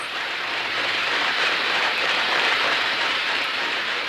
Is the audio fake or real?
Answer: fake